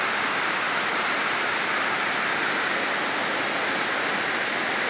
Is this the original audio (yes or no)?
yes